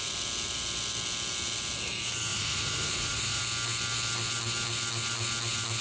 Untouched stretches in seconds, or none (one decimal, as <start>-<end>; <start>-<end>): 0.0-2.3; 3.4-5.8